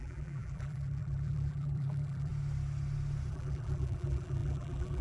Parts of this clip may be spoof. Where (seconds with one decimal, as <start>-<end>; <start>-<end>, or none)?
0.0-2.3; 3.3-5.0